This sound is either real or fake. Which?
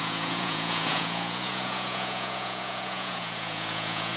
fake